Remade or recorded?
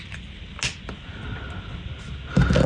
recorded